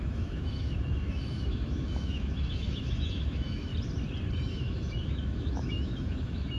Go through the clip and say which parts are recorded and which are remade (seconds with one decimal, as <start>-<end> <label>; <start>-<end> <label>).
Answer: 0.0-3.7 remade; 3.7-4.5 recorded; 4.5-6.6 remade

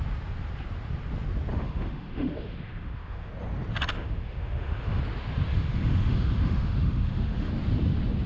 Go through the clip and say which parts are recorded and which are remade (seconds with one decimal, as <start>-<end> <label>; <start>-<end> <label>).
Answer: 0.0-1.5 recorded; 1.5-3.3 remade; 3.3-3.9 recorded; 3.9-5.0 remade; 5.0-5.5 recorded; 5.5-7.5 remade; 7.5-8.3 recorded

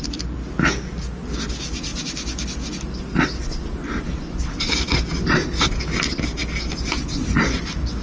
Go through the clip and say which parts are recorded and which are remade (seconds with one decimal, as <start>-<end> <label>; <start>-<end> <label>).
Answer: 0.0-8.0 recorded

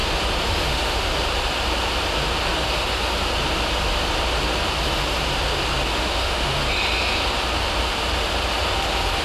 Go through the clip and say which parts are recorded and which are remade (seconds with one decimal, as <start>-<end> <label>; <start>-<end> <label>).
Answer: 0.0-0.7 recorded; 0.7-1.1 remade; 1.1-5.9 recorded; 5.9-6.6 remade; 6.6-9.2 recorded

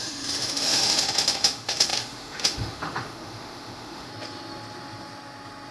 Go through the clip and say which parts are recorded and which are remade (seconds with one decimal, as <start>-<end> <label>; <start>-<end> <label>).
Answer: 0.0-4.1 remade; 4.1-5.7 recorded

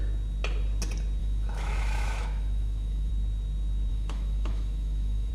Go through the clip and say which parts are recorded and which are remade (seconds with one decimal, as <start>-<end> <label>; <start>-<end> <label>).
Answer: 0.0-1.2 recorded; 1.2-3.1 remade; 3.1-3.9 recorded; 3.9-5.3 remade